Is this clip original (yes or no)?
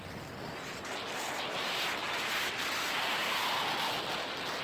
yes